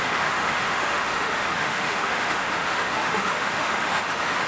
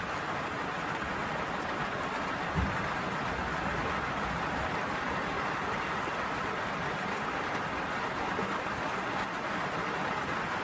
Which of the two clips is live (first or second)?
second